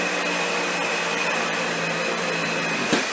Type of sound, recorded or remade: recorded